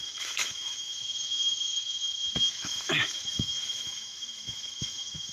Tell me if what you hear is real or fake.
fake